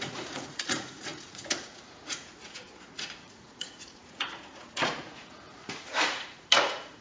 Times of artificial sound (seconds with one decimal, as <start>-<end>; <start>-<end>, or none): 0.0-7.0